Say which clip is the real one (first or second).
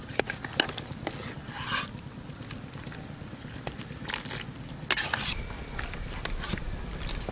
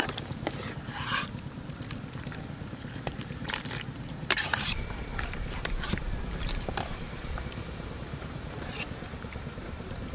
first